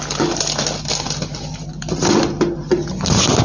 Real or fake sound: real